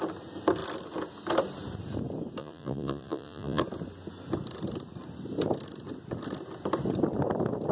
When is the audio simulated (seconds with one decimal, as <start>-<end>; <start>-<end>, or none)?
2.4-3.6